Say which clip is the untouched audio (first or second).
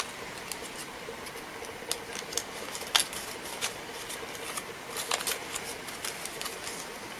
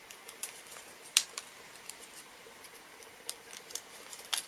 first